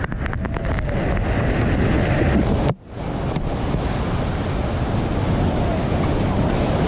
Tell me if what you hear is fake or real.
real